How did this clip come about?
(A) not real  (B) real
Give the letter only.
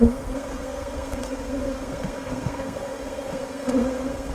A